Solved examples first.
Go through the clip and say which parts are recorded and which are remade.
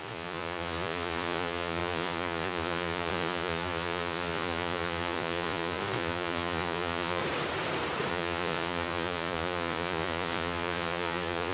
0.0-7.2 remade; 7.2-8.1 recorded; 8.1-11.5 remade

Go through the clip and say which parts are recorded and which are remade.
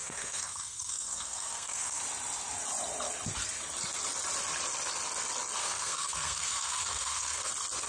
0.0-2.0 remade; 2.0-5.6 recorded; 5.6-7.5 remade; 7.5-7.9 recorded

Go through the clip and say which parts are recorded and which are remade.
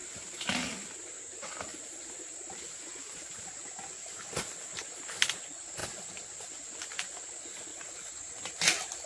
0.0-5.8 recorded; 5.8-6.7 remade; 6.7-7.7 recorded; 7.7-8.5 remade; 8.5-9.1 recorded